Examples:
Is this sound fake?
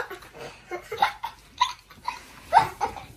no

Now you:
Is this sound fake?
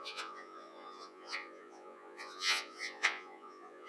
yes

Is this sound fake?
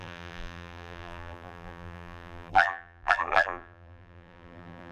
yes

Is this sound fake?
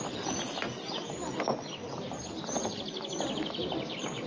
no